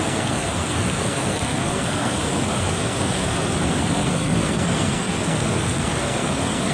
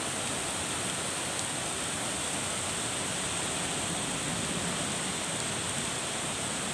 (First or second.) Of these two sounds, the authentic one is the second